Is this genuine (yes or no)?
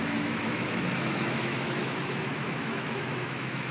no